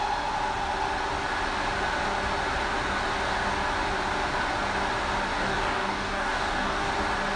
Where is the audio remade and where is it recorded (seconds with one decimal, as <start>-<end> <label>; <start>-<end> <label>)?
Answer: 0.0-5.4 recorded; 5.4-6.9 remade; 6.9-7.4 recorded

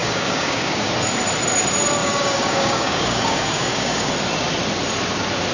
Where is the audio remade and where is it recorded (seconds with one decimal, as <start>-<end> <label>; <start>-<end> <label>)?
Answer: 0.0-0.9 remade; 0.9-2.0 recorded; 2.0-4.1 remade; 4.1-5.5 recorded

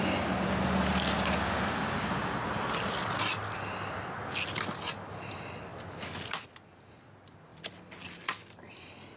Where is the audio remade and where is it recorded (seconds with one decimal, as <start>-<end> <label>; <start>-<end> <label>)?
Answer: 0.0-9.2 recorded

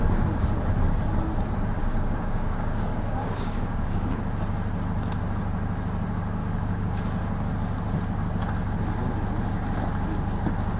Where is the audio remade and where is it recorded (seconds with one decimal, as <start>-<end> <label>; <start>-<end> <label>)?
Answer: 0.0-1.8 recorded; 1.8-4.2 remade; 4.2-6.4 recorded; 6.4-7.0 remade; 7.0-10.8 recorded

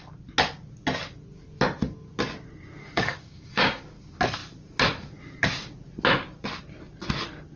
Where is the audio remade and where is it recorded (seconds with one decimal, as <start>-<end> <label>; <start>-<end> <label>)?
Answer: 0.0-2.8 recorded; 2.8-3.8 remade; 3.8-7.6 recorded

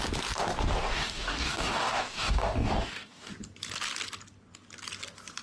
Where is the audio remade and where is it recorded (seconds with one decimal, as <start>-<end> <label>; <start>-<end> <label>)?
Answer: 0.0-0.9 recorded; 0.9-3.3 remade; 3.3-5.4 recorded

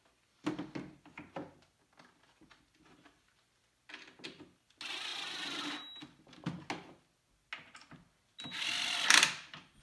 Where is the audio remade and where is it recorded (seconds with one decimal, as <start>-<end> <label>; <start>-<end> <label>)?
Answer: 0.0-9.8 recorded